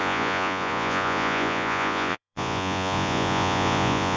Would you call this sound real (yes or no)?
no